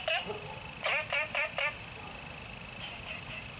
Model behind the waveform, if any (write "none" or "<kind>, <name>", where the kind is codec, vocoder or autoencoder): none